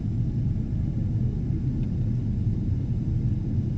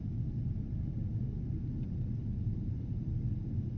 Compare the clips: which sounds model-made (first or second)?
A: second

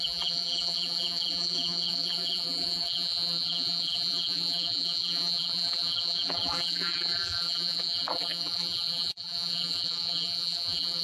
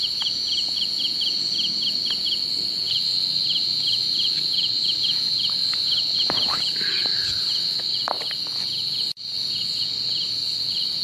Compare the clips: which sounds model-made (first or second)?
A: first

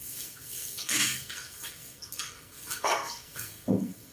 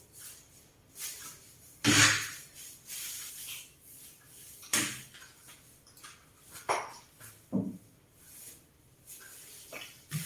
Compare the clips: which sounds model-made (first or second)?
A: first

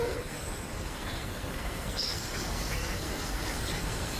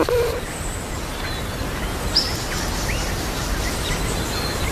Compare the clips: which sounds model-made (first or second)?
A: first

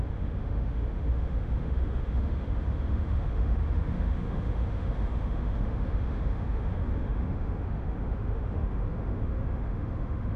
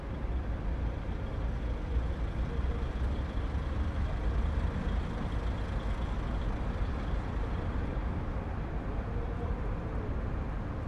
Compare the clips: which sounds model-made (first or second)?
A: first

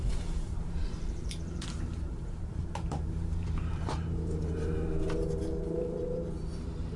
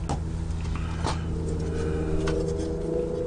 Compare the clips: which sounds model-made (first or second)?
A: first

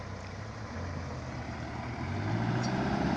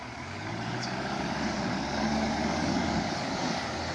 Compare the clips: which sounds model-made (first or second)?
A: second